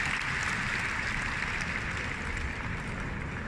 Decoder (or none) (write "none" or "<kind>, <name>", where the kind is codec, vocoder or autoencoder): none